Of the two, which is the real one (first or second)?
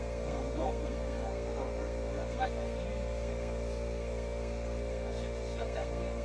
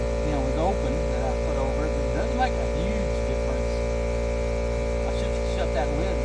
second